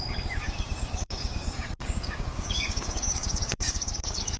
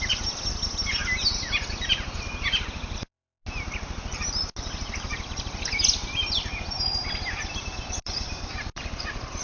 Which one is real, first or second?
second